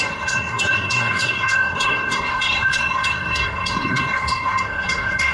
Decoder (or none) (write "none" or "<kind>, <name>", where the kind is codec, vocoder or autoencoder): codec, SNAC